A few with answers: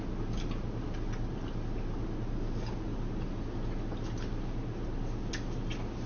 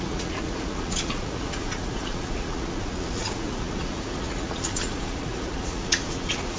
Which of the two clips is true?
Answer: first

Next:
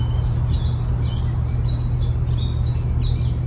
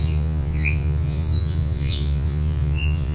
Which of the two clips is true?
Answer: first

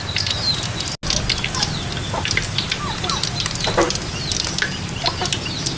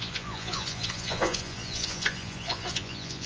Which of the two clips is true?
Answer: first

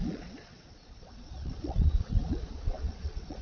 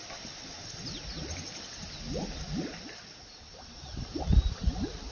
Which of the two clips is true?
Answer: second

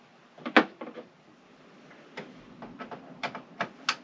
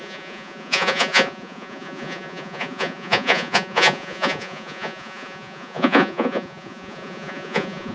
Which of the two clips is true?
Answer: first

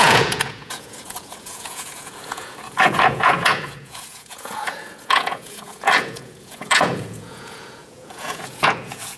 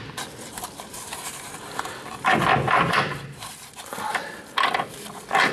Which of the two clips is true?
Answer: second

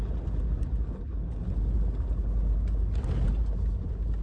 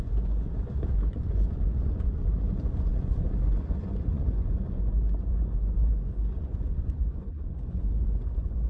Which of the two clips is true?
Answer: first